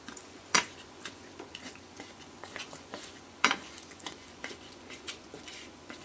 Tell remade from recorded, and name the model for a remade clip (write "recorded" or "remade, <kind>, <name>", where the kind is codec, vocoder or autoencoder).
remade, vocoder, Vocos